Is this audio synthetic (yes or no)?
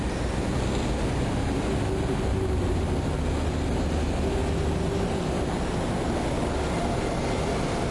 no